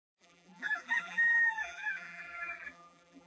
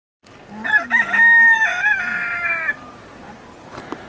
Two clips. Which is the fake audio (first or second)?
first